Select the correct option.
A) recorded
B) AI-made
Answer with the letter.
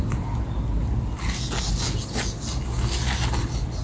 A